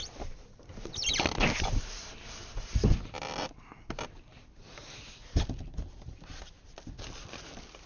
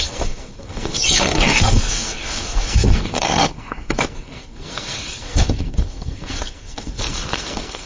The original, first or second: first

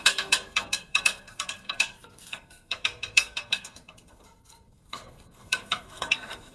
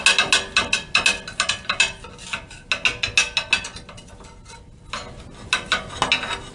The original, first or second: second